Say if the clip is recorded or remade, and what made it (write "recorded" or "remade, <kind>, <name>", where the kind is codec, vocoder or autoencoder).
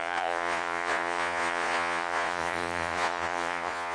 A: remade, vocoder, Vocos